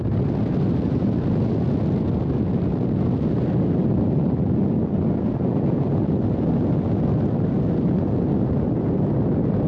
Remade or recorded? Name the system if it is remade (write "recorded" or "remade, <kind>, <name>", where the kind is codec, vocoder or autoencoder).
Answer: recorded